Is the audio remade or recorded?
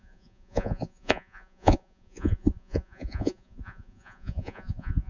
remade